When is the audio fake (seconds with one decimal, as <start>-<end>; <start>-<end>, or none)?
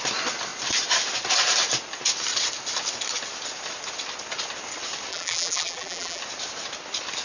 5.1-6.2